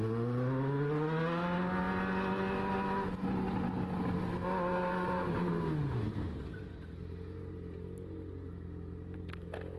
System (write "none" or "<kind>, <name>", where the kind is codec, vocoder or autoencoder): none